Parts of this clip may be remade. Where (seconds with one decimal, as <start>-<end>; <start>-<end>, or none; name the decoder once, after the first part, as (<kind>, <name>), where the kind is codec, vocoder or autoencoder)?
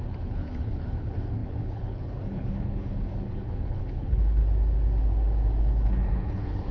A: 0.0-4.4 (codec, HILCodec); 5.6-6.7